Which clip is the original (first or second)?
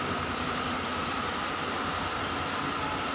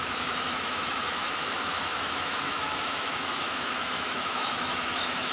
first